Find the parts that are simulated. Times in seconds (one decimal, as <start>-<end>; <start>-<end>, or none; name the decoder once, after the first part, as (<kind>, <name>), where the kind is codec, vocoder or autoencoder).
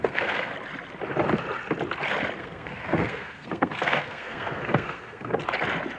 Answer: 0.0-0.5 (codec, SNAC); 2.4-5.3